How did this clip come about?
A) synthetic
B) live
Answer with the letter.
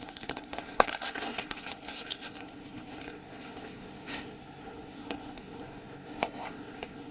A